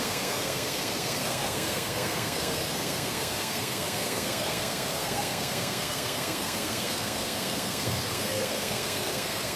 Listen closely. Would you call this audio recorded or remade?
remade